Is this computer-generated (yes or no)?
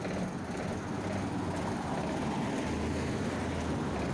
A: no